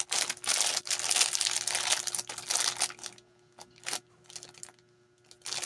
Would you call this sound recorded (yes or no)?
yes